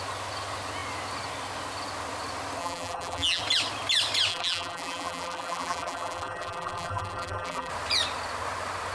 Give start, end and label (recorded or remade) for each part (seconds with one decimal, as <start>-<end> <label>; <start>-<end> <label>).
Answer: 0.0-2.6 recorded; 2.6-3.4 remade; 3.4-4.3 recorded; 4.3-7.7 remade; 7.7-8.9 recorded